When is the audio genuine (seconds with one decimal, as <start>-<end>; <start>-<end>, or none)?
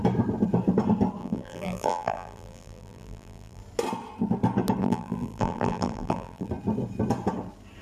0.0-1.2; 3.6-4.8; 6.5-7.8